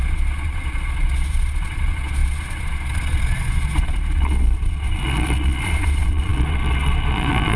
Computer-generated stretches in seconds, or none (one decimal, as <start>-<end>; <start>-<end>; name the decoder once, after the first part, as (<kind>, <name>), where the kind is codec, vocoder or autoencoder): 0.0-7.6 (vocoder, Vocos)